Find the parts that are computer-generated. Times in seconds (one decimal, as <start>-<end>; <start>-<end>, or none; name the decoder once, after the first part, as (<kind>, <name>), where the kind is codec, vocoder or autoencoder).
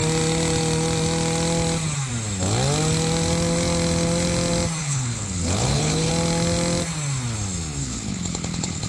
4.8-6.1 (codec, HILCodec); 7.8-8.9